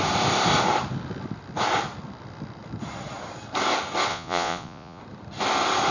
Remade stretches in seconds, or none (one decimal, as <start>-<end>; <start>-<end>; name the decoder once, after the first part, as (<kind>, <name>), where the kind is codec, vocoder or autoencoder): 4.1-5.0 (vocoder, Vocos)